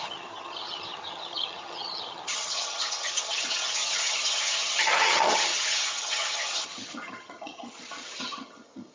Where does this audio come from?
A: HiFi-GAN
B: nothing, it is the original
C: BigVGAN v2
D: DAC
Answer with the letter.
A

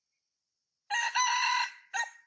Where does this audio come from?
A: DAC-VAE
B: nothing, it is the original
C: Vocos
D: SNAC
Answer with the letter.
B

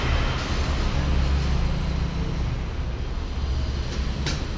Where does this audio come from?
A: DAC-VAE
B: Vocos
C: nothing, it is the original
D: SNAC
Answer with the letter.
C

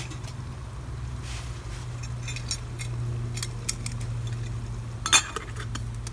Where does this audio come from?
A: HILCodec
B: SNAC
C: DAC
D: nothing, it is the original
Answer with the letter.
D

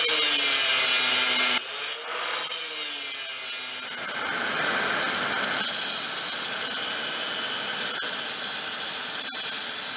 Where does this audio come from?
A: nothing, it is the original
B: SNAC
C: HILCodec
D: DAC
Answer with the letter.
A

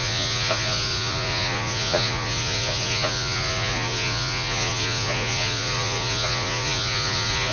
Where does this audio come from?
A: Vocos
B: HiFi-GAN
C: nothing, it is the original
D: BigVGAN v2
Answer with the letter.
A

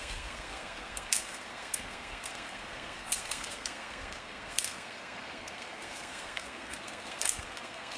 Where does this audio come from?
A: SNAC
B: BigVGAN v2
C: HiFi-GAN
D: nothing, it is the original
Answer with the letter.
A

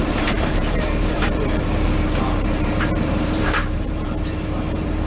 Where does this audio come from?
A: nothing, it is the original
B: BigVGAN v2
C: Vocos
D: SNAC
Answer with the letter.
B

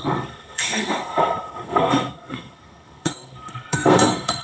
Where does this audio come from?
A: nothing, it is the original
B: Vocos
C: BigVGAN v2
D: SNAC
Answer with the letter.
D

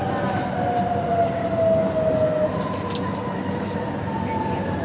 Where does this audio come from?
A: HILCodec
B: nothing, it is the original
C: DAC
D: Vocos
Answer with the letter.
B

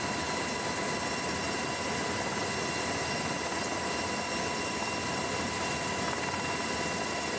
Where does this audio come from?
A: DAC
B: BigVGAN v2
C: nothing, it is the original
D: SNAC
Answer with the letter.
C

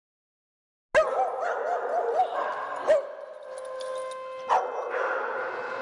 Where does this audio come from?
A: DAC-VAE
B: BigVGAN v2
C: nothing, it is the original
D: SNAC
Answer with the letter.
C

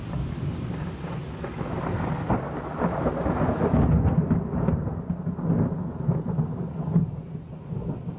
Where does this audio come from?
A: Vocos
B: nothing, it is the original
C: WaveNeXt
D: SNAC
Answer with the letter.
B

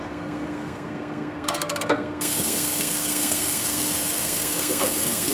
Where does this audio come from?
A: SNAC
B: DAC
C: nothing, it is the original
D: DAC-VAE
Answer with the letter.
A